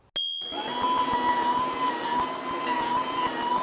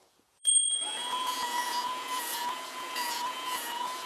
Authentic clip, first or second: first